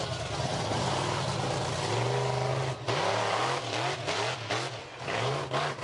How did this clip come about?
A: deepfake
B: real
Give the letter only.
B